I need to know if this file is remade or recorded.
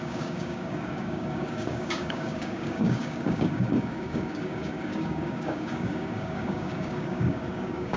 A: remade